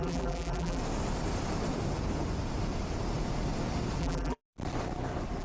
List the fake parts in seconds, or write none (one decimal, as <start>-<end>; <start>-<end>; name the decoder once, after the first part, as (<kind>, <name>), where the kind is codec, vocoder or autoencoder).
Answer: 0.0-0.8 (vocoder, BigVGAN v2); 4.0-4.4